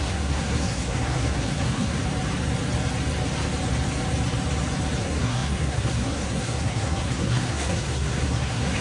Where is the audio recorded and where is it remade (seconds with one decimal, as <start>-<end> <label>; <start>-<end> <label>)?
0.0-2.0 remade; 2.0-5.0 recorded; 5.0-8.8 remade